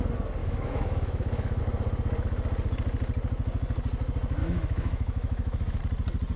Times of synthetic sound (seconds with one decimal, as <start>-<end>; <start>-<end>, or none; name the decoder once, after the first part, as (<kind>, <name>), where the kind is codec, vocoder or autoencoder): 0.4-1.6 (autoencoder, DAC-VAE); 4.4-5.8